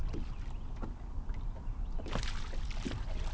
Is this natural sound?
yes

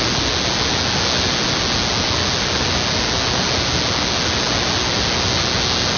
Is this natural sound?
yes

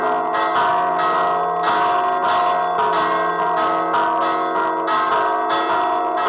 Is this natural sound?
yes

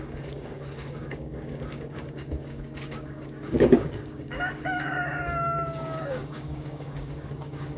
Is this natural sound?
no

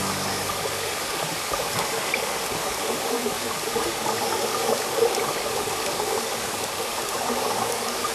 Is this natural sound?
no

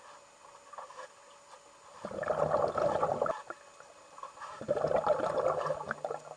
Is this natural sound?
yes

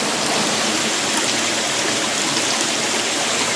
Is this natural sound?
yes